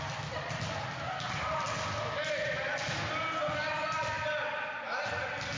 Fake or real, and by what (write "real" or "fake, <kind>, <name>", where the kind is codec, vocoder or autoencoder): real